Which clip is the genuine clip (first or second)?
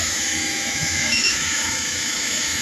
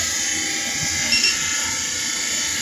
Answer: second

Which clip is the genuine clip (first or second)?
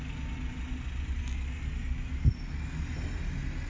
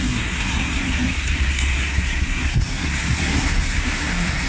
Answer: first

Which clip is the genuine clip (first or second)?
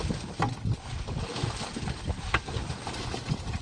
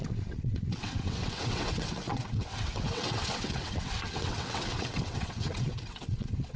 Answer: first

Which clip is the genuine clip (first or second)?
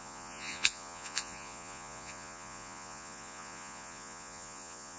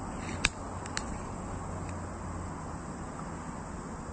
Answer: second